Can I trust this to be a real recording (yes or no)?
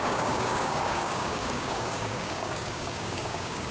no